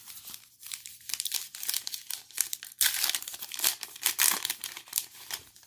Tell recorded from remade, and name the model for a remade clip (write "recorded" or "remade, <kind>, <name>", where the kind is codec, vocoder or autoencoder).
remade, vocoder, BigVGAN v2